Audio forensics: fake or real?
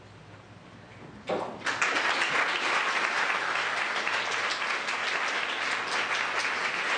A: real